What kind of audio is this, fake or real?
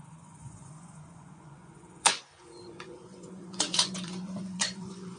fake